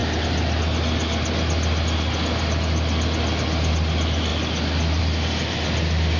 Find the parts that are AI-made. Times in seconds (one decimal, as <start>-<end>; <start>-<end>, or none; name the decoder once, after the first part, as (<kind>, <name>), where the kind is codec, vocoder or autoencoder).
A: none